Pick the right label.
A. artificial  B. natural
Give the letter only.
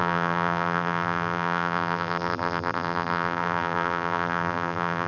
A